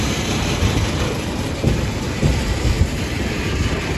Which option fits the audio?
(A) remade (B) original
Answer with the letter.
A